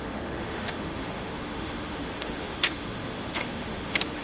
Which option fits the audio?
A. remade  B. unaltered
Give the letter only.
A